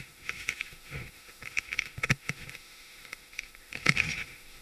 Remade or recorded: remade